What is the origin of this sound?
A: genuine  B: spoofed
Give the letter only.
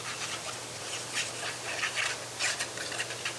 A